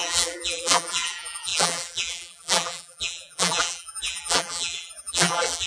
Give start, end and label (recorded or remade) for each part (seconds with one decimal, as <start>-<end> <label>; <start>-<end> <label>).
0.0-5.7 remade